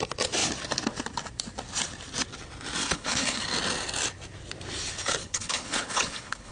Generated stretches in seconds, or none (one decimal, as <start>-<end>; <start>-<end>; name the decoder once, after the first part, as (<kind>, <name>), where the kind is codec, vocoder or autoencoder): 2.8-3.4 (codec, HILCodec); 5.2-6.5